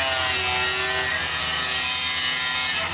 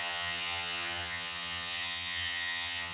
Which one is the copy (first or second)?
second